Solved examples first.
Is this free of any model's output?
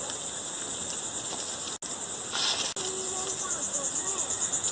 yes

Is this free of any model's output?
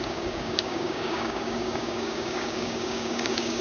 no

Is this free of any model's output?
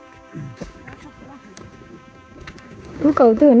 no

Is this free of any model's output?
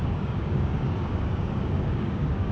no